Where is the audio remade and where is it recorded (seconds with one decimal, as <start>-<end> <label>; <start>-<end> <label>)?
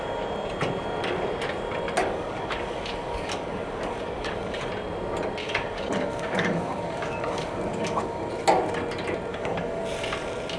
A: 0.0-2.0 recorded; 2.0-4.7 remade; 4.7-5.4 recorded; 5.4-8.3 remade; 8.3-9.3 recorded; 9.3-9.8 remade; 9.8-10.6 recorded